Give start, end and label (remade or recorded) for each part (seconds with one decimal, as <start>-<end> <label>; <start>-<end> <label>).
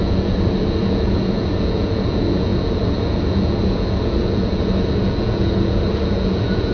0.0-6.7 remade